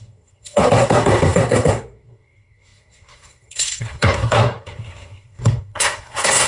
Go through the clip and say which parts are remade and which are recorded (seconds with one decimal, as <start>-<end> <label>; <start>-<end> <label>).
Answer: 0.0-6.5 remade